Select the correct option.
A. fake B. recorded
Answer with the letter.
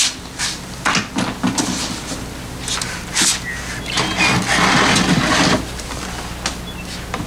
B